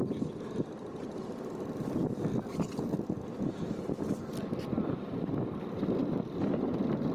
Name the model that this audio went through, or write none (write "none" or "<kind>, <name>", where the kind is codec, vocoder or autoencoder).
none